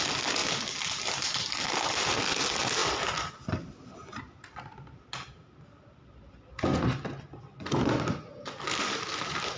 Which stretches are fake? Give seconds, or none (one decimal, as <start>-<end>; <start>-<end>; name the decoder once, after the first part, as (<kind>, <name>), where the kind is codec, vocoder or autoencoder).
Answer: none